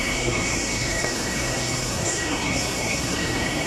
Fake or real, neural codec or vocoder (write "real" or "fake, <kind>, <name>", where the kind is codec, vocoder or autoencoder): fake, codec, SNAC